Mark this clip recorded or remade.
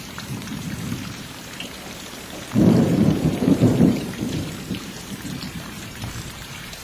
remade